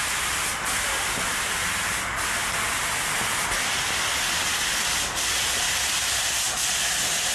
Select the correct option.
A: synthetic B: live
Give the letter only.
B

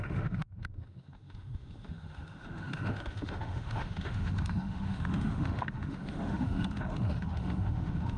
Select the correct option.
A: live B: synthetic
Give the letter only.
B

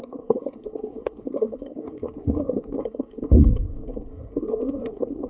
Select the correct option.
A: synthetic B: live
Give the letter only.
A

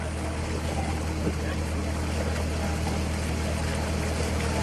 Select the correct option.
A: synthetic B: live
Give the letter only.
B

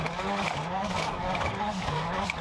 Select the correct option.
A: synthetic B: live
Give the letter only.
A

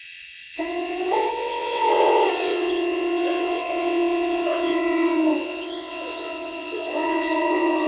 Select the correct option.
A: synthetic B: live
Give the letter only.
A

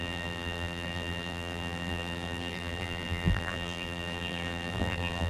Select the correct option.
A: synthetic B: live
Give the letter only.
A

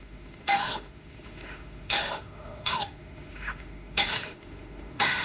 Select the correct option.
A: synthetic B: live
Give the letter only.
A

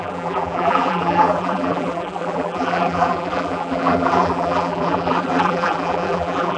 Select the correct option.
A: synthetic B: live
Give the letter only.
A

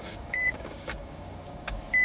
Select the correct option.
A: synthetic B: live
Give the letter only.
A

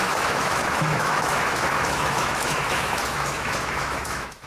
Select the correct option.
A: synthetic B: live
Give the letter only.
A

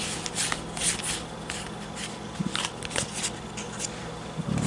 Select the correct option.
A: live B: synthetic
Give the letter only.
A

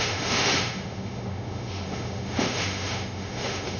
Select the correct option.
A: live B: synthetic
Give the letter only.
B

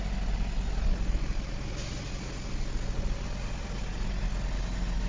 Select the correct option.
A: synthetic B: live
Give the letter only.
B